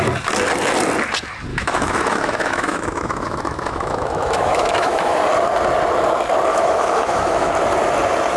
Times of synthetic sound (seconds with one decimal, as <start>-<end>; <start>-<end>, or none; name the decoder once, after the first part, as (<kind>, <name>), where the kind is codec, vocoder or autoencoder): 1.5-5.2 (autoencoder, DAC-VAE); 6.5-7.5